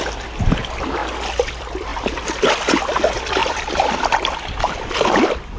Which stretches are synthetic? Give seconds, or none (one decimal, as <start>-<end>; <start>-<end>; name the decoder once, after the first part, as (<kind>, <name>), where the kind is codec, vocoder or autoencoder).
0.6-1.0 (vocoder, BigVGAN v2); 1.5-5.6